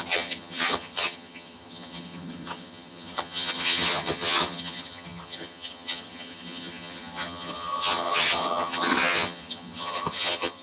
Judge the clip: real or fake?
fake